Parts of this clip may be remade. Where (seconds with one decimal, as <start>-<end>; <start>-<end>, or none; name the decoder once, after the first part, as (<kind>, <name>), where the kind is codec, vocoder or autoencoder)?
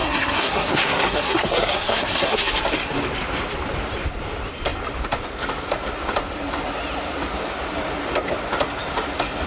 0.0-2.5 (codec, SNAC)